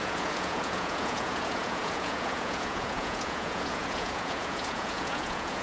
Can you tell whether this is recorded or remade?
remade